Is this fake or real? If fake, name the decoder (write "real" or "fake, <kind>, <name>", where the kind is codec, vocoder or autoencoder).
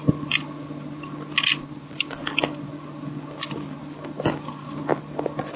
real